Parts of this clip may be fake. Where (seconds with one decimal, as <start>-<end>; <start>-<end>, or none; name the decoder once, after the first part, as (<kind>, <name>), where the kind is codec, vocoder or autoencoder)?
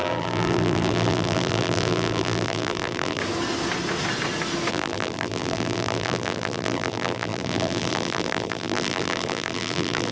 0.0-3.2 (vocoder, BigVGAN v2); 4.7-10.1